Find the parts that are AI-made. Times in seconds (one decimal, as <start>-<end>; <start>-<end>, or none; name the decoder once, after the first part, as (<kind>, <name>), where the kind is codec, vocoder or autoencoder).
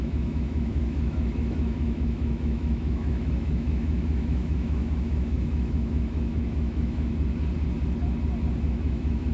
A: 0.0-7.1 (autoencoder, DAC-VAE); 8.6-9.3